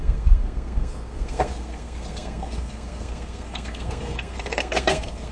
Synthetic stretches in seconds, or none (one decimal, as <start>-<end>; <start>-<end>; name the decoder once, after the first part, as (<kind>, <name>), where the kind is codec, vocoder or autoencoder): 0.0-5.3 (codec, SNAC)